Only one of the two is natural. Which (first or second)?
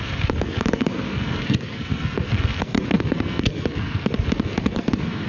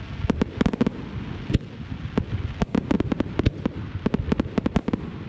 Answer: second